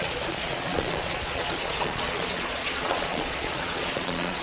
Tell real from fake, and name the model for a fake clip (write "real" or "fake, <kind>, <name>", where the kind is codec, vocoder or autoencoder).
fake, vocoder, Vocos